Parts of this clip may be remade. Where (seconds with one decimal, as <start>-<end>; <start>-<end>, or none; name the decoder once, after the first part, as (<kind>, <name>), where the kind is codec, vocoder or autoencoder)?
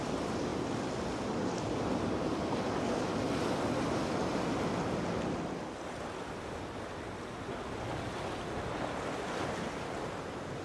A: none